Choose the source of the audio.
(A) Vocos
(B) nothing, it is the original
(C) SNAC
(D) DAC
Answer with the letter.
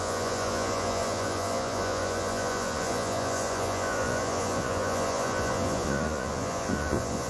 A